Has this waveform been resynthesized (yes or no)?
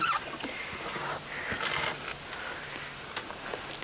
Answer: no